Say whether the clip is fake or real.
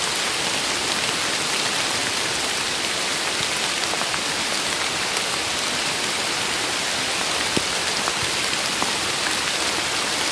real